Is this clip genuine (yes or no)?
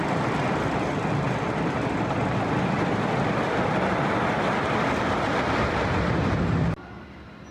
yes